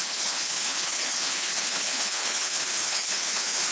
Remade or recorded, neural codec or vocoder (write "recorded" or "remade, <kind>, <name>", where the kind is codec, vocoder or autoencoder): remade, codec, HILCodec